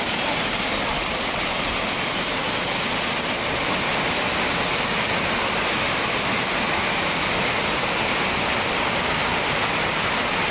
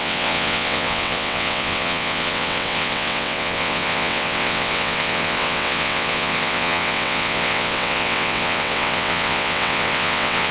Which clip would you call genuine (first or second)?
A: first